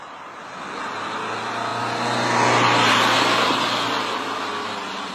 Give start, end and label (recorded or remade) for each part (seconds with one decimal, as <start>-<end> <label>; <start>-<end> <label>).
0.0-5.1 recorded